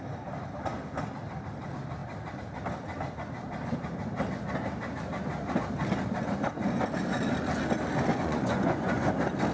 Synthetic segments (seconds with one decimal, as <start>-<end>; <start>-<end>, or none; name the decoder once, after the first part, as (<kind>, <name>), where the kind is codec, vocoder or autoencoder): 8.1-9.1 (vocoder, Vocos)